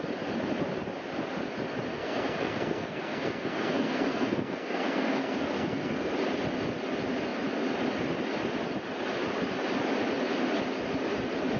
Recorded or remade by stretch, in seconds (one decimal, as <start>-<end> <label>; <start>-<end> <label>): 0.0-1.9 recorded; 1.9-6.1 remade; 6.1-11.6 recorded